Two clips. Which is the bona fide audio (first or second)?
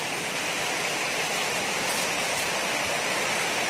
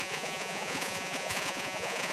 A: first